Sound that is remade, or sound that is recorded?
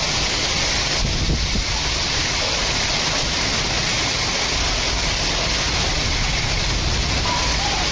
recorded